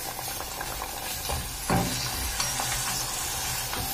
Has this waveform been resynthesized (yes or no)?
no